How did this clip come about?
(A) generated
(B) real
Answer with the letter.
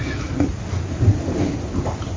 A